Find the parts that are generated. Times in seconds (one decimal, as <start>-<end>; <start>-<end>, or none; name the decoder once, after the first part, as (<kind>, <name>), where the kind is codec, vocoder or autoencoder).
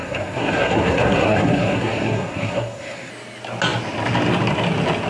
0.0-3.1 (codec, SNAC)